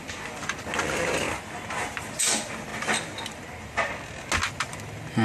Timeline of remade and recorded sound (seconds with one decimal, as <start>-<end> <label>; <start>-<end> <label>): 0.0-5.2 recorded